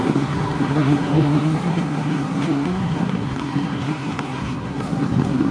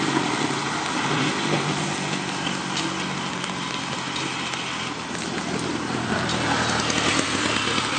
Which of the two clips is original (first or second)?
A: second